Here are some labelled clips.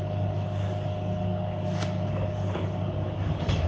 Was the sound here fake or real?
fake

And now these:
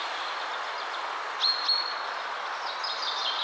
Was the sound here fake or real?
real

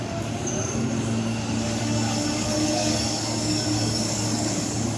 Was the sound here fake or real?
fake